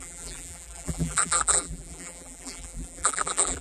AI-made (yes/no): yes